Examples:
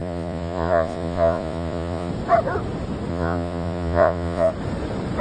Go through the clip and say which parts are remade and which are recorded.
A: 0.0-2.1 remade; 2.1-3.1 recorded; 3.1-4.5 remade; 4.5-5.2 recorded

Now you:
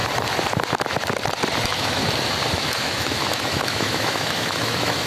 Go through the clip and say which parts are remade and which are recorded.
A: 0.0-1.6 recorded; 1.6-2.0 remade; 2.0-2.5 recorded; 2.5-5.1 remade

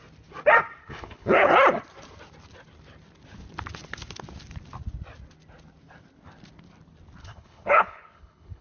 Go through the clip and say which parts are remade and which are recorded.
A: 0.0-0.8 recorded; 0.8-1.5 remade; 1.5-7.2 recorded; 7.2-8.6 remade